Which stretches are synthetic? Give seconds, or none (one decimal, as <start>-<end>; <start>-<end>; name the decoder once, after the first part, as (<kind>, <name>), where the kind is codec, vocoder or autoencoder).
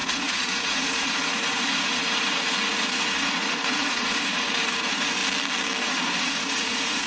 0.0-5.2 (vocoder, Vocos); 5.8-7.1